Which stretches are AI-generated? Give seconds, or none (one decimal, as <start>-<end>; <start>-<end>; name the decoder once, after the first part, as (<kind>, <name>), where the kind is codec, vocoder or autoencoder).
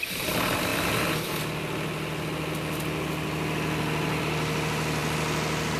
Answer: none